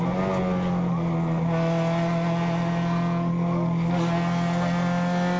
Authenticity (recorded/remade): recorded